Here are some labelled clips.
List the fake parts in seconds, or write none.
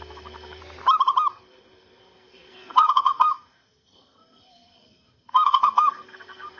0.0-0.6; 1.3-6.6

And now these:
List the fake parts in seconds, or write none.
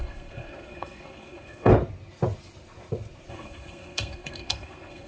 0.0-1.7; 3.3-5.1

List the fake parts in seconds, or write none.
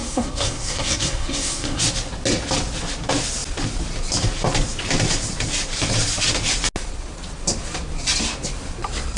0.0-1.8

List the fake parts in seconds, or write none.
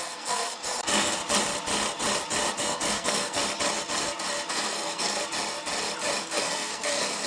0.0-1.2; 2.6-3.4; 4.5-5.2; 6.2-7.3